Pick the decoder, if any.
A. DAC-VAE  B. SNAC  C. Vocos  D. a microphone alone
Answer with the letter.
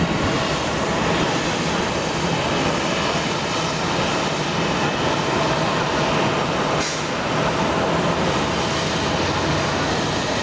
D